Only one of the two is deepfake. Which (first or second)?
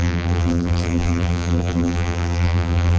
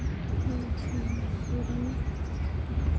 first